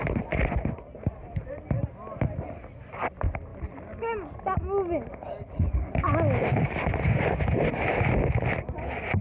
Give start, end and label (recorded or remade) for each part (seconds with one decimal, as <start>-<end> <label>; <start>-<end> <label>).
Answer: 0.0-9.2 recorded